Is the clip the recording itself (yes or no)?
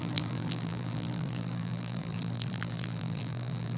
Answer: no